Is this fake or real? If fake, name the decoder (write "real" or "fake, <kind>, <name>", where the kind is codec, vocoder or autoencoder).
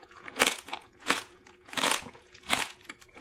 fake, vocoder, Vocos